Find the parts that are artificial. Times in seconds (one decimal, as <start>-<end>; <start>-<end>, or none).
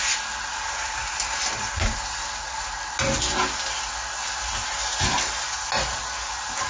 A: none